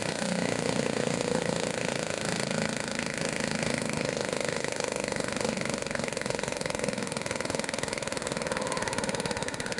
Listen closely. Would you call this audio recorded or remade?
remade